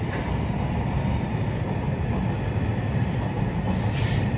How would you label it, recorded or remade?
recorded